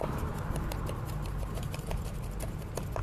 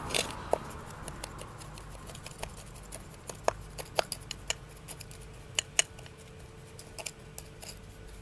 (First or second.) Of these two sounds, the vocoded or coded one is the first